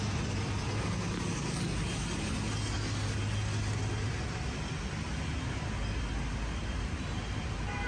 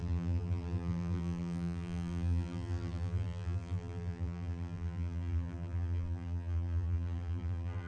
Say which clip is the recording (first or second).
first